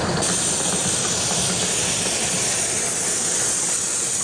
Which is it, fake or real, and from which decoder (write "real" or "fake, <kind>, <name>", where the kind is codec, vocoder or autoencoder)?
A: real